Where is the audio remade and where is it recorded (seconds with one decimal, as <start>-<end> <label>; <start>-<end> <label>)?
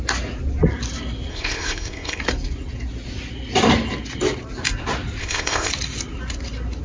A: 0.0-1.3 recorded; 1.3-2.2 remade; 2.2-5.2 recorded; 5.2-5.7 remade; 5.7-6.8 recorded